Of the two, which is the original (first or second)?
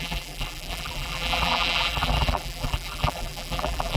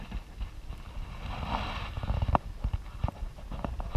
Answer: second